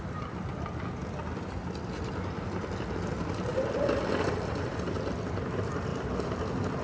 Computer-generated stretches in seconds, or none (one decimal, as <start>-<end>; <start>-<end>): none

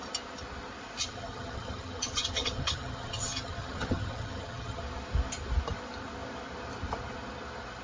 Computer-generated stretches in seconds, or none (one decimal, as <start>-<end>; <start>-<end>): 1.0-4.8

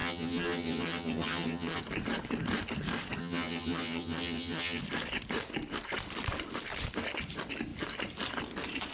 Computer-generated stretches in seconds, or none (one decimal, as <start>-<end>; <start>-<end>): 0.0-1.8; 3.2-4.8

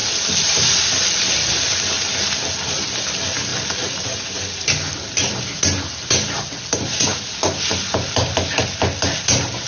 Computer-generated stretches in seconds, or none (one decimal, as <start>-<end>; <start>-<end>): none